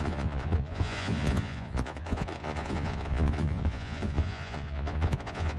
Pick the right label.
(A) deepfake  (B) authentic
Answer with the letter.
A